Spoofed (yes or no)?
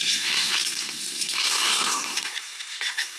yes